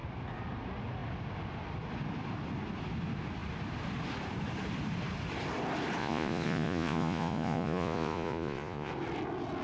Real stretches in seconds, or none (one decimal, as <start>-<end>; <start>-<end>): 0.0-6.0; 8.9-9.6